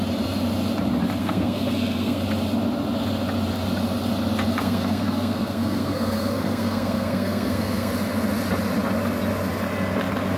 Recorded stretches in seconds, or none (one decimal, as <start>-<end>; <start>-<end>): 0.0-1.2; 2.2-4.6; 7.9-10.4